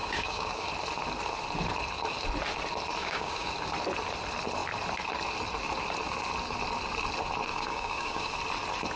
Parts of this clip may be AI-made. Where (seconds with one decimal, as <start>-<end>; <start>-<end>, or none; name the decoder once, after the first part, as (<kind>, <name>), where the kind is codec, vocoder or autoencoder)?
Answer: 0.0-0.7 (codec, DAC); 3.0-3.5; 7.5-8.3